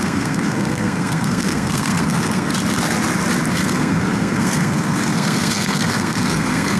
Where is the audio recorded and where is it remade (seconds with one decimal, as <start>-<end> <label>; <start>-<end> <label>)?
0.0-2.5 remade; 2.5-3.5 recorded; 3.5-6.8 remade